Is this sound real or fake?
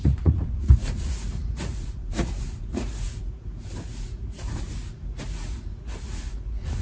fake